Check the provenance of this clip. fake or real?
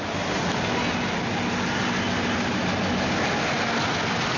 real